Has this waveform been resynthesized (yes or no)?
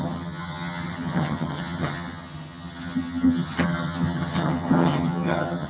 yes